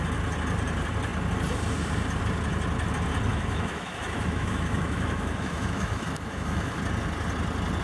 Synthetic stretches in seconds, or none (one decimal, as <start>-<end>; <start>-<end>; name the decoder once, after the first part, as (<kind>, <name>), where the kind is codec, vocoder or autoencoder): 3.3-6.8 (autoencoder, DAC-VAE)